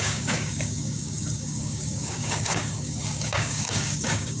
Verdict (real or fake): fake